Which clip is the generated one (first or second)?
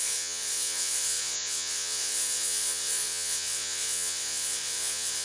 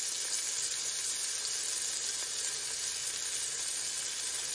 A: first